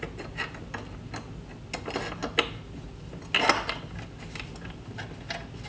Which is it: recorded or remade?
recorded